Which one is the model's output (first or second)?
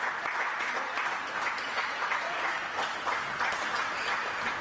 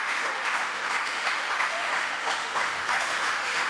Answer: second